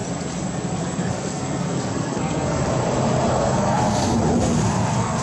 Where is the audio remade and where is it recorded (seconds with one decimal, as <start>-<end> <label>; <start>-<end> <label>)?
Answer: 0.0-0.8 recorded; 0.8-2.6 remade; 2.6-3.3 recorded; 3.3-3.8 remade; 3.8-4.7 recorded; 4.7-5.2 remade